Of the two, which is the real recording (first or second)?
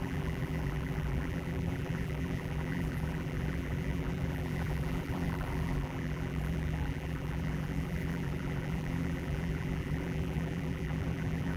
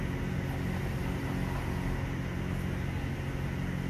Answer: second